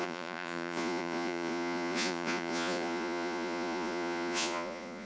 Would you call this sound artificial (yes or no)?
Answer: yes